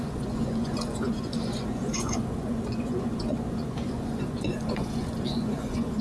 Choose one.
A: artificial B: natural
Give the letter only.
A